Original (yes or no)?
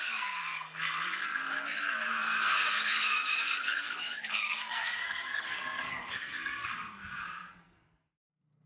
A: no